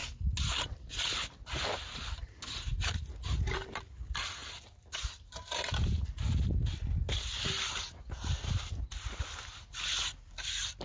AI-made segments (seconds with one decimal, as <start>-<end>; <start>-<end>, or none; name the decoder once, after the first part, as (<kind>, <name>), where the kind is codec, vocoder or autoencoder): none